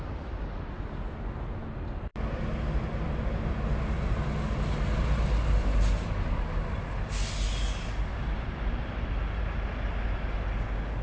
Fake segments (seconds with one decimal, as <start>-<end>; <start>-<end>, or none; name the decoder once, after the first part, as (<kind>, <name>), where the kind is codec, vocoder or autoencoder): 8.1-9.4 (vocoder, BigVGAN v2)